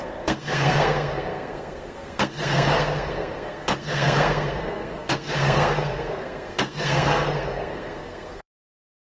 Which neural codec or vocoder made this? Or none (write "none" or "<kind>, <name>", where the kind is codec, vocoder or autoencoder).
codec, SNAC